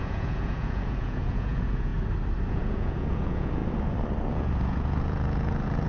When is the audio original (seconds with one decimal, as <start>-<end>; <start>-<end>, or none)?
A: 1.9-2.5; 3.6-4.3